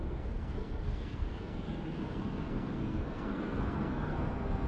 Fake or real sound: fake